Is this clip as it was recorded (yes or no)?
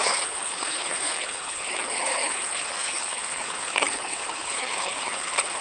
no